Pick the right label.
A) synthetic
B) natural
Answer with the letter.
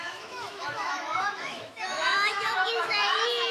A